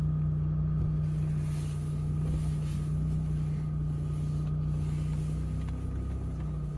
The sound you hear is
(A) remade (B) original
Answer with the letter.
B